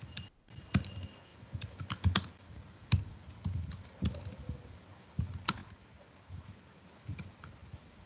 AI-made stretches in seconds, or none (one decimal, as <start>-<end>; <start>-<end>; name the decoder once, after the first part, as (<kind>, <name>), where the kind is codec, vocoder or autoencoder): none